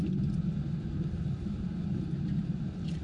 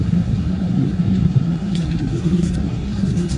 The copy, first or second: second